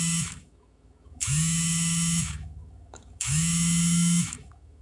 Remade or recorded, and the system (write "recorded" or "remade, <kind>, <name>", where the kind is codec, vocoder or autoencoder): remade, autoencoder, DAC-VAE